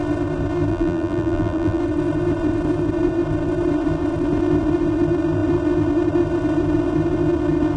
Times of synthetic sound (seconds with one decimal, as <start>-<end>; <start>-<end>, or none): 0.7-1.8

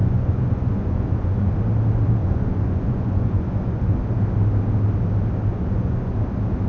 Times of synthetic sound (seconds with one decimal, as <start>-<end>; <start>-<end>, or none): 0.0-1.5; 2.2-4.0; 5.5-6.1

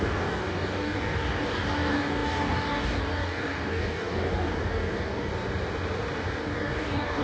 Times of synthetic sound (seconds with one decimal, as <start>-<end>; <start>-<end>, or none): 0.0-5.3; 6.4-7.2

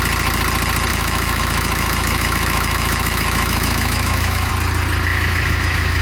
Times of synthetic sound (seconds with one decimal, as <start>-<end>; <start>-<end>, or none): 0.9-4.5; 5.1-6.0

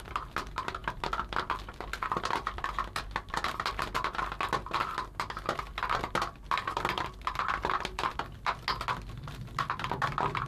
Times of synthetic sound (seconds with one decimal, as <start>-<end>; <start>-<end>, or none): none